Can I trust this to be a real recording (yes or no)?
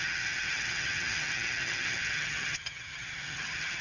no